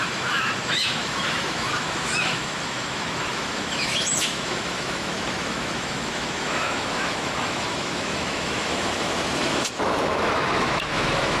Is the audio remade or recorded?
remade